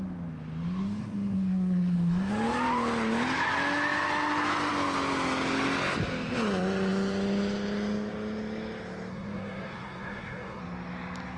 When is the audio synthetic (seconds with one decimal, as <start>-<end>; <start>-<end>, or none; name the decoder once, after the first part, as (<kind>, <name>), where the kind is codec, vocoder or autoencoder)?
1.0-2.3 (codec, SNAC); 9.1-10.6